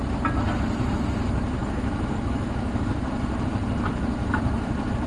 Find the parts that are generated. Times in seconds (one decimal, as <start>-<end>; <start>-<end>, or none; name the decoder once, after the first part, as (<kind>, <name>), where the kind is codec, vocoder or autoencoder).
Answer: 1.6-2.8 (autoencoder, DAC-VAE)